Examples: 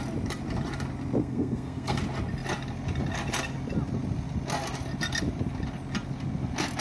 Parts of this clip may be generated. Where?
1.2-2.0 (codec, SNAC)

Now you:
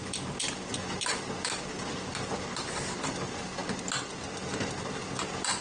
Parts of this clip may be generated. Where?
none

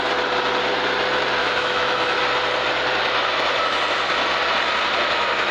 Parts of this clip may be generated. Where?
1.4-2.2 (autoencoder, DAC-VAE)

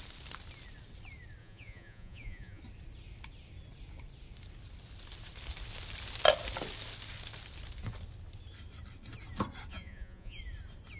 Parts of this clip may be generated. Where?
1.4-2.6 (vocoder, Vocos); 9.7-10.4